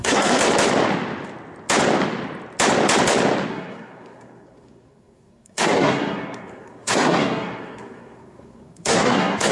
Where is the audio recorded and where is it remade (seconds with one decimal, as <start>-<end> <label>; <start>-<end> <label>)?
0.0-0.4 remade; 0.4-3.5 recorded; 3.5-9.5 remade